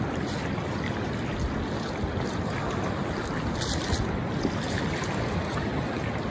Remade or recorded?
recorded